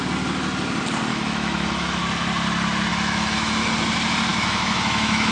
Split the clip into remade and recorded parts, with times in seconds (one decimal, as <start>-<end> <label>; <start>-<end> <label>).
0.0-1.1 recorded; 1.1-2.0 remade; 2.0-2.9 recorded; 2.9-3.7 remade; 3.7-4.3 recorded; 4.3-5.3 remade